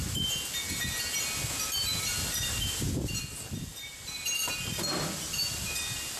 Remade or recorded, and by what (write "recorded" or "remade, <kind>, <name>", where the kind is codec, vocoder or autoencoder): remade, vocoder, BigVGAN v2